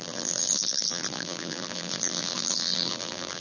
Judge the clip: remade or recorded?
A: remade